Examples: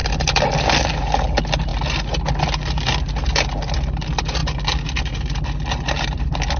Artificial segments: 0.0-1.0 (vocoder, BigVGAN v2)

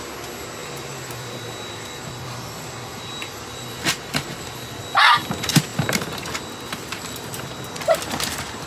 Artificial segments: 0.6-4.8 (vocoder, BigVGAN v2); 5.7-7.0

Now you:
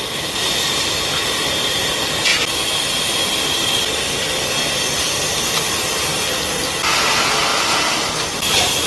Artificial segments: none

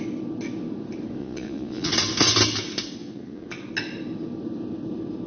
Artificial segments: 1.2-1.9 (vocoder, Vocos); 3.0-3.6

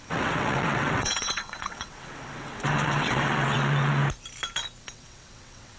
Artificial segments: 0.0-4.0 (vocoder, WaveNeXt); 4.8-5.8

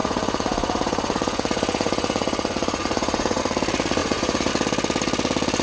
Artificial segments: 0.0-3.4 (vocoder, Vocos); 4.0-4.5